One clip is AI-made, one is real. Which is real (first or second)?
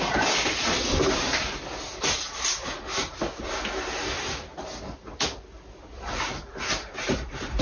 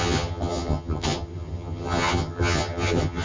first